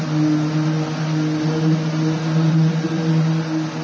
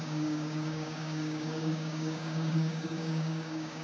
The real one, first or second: first